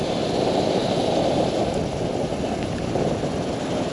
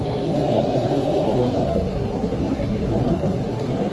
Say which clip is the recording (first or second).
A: first